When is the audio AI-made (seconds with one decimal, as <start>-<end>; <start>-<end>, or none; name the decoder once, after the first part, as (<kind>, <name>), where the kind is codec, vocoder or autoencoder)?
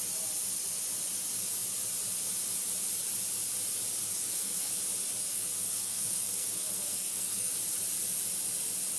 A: 4.1-4.7 (codec, SNAC); 5.3-7.5